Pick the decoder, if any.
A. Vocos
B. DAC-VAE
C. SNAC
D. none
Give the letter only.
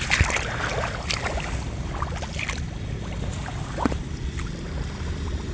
D